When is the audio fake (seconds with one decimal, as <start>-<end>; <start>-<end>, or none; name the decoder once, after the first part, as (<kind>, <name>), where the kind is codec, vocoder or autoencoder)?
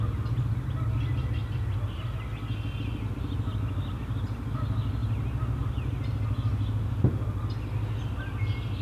none